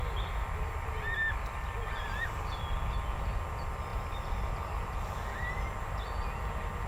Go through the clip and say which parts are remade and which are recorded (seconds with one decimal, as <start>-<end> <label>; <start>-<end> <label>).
0.0-6.9 recorded